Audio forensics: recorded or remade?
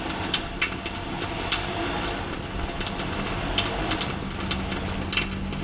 recorded